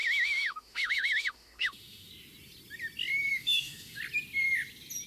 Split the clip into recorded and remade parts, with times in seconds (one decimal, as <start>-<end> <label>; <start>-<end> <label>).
0.0-2.1 remade; 2.1-3.3 recorded; 3.3-4.0 remade; 4.0-5.1 recorded